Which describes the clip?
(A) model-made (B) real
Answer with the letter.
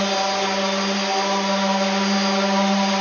B